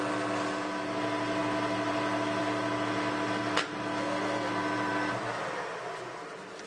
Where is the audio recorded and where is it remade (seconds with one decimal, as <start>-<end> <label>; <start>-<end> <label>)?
0.0-6.7 recorded